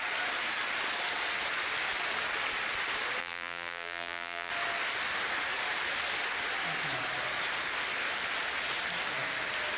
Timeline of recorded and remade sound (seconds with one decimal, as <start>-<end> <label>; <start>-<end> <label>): 0.0-3.2 recorded; 3.2-4.5 remade; 4.5-9.8 recorded